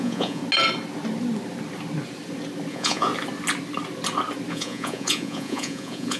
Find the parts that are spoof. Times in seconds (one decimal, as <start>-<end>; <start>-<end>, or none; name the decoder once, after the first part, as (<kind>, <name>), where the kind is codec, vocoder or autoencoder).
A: 0.0-0.4 (vocoder, Vocos); 2.7-3.1; 4.5-6.2